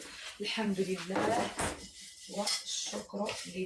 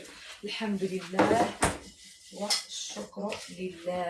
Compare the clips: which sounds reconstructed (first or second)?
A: first